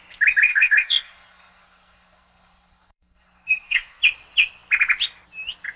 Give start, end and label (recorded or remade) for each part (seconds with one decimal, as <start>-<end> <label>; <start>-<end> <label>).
0.0-0.5 recorded; 0.5-4.0 remade; 4.0-5.8 recorded